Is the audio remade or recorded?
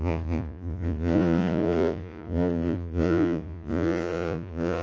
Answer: remade